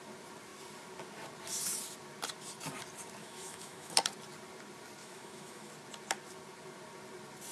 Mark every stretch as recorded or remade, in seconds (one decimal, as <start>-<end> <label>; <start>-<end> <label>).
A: 0.0-3.2 recorded; 3.2-3.9 remade; 3.9-5.0 recorded; 5.0-5.7 remade; 5.7-7.5 recorded